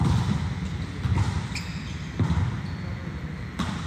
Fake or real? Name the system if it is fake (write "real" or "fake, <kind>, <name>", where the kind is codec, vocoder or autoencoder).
fake, vocoder, BigVGAN v2